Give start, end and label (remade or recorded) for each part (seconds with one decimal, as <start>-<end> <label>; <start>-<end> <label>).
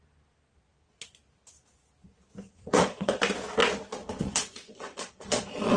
0.0-2.5 recorded; 2.5-3.2 remade; 3.2-4.0 recorded; 4.0-5.8 remade